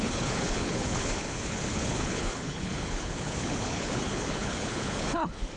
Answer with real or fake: fake